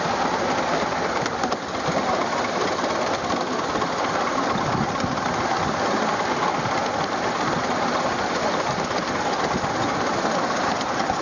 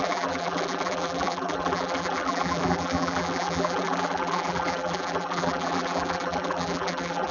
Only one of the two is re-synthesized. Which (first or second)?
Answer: second